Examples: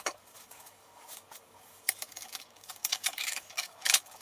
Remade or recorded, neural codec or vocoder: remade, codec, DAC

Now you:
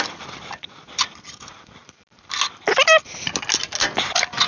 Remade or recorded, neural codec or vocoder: recorded